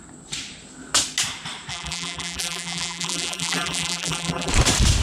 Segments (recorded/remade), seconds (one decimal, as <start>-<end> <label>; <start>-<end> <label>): 0.0-1.7 recorded; 1.7-4.5 remade; 4.5-5.0 recorded